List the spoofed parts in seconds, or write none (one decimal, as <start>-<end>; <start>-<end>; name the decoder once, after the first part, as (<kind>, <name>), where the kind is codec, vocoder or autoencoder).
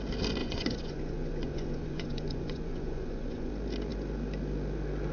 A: 0.4-3.5 (vocoder, Vocos)